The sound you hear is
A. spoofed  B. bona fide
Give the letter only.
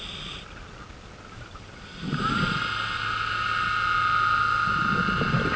B